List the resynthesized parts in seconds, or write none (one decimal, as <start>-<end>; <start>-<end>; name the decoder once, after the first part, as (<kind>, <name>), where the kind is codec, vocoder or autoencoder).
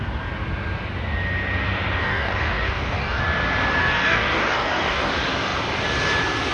2.0-3.2 (codec, DAC); 3.8-5.1